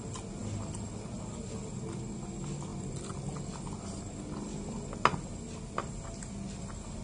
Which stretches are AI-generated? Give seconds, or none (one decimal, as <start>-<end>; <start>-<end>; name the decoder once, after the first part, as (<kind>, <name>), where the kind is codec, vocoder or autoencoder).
none